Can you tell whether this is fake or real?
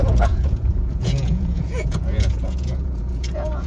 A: fake